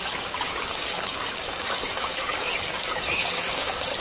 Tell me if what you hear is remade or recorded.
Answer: remade